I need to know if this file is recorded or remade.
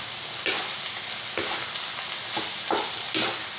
recorded